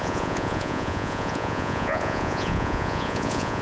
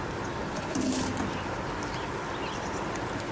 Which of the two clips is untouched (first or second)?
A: second